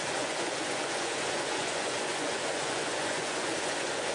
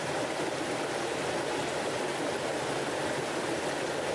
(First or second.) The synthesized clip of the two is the first